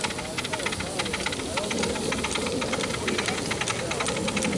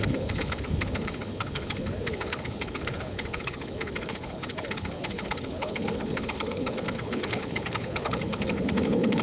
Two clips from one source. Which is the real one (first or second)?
first